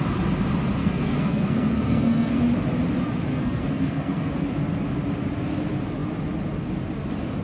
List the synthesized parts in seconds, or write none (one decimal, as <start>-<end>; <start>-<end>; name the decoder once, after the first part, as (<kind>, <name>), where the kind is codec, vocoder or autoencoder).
0.8-2.4 (codec, SNAC); 3.3-4.3